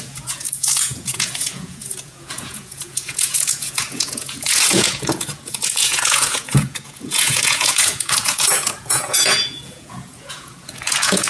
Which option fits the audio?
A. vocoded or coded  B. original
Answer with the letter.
A